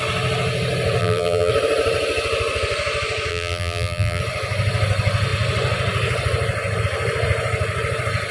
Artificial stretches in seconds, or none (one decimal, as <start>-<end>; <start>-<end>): 1.0-1.5; 3.3-4.2